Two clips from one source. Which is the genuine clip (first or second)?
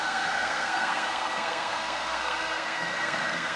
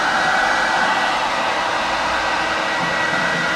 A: second